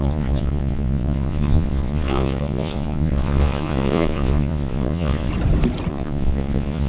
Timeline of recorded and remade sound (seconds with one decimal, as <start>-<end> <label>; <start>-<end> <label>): 0.0-5.3 remade; 5.3-5.9 recorded; 5.9-6.9 remade